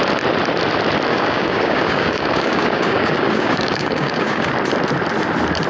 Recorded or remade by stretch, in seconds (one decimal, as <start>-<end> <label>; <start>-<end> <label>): 0.0-1.1 recorded; 1.1-4.5 remade; 4.5-5.7 recorded